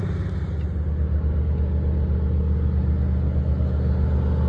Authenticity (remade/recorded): recorded